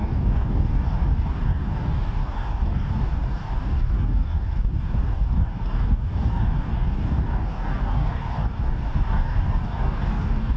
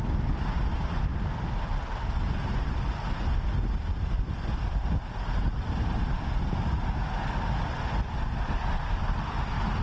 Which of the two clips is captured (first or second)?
second